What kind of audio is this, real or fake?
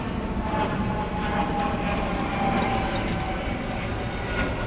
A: real